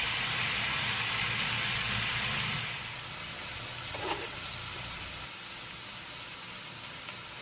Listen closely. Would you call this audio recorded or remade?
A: recorded